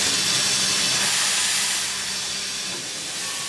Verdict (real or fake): real